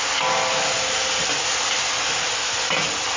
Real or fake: real